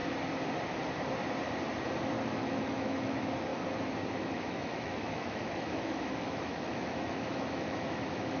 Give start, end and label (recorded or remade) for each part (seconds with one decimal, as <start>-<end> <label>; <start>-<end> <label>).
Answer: 0.0-2.2 recorded; 2.2-3.5 remade; 3.5-4.3 recorded; 4.3-8.4 remade